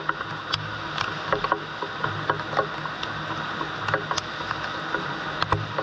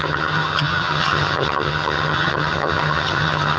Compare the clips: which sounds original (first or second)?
first